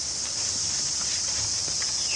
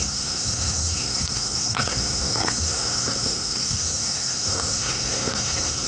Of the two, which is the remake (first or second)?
second